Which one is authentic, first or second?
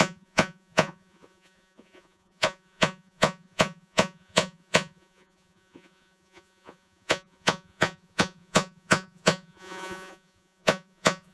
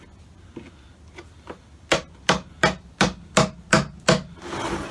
second